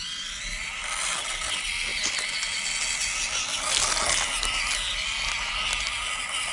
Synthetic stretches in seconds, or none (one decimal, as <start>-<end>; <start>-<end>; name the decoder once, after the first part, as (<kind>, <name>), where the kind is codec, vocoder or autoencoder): none